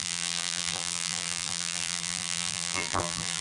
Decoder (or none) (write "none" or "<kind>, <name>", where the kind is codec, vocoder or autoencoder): vocoder, BigVGAN v2